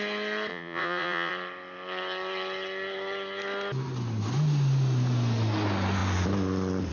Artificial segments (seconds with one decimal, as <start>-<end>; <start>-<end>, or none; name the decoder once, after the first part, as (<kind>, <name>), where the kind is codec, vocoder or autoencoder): 0.5-1.3 (vocoder, Vocos)

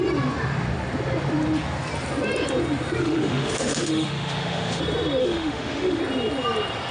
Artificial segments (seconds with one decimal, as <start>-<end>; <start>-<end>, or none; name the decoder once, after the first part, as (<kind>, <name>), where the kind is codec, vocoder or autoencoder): 3.0-4.8 (autoencoder, DAC-VAE); 5.2-6.0

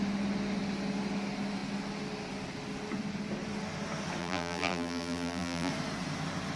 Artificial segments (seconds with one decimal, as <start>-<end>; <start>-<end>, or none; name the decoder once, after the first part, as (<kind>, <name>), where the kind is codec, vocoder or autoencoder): 4.2-5.7 (vocoder, BigVGAN v2)